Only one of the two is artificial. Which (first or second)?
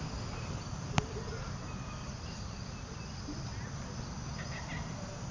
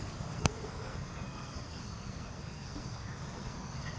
second